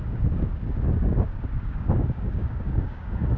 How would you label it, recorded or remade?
remade